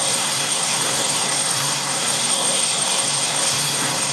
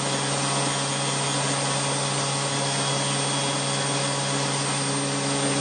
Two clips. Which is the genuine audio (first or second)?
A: second